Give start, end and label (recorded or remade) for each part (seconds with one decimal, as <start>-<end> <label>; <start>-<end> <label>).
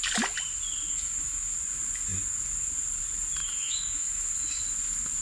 0.0-0.9 recorded; 0.9-1.5 remade; 1.5-3.4 recorded; 3.4-4.6 remade; 4.6-5.2 recorded